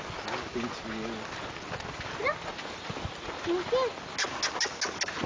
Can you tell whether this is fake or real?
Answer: real